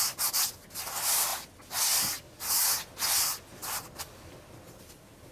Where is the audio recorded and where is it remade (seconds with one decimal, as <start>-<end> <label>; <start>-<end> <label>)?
0.0-5.3 recorded